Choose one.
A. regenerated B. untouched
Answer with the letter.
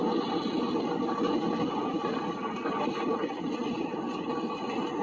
B